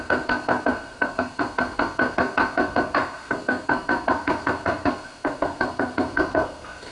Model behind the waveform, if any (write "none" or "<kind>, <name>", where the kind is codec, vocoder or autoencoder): codec, SNAC